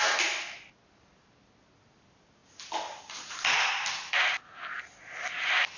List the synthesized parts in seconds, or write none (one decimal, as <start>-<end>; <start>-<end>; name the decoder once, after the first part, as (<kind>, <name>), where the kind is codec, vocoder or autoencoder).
none